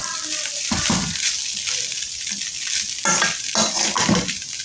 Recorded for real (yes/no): yes